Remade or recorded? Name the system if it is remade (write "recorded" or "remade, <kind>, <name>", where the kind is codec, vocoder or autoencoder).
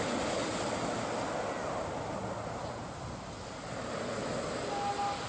recorded